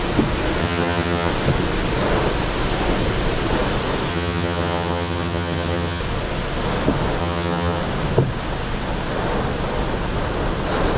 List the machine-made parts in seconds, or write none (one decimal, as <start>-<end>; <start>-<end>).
0.6-1.3; 4.1-6.0; 7.2-7.8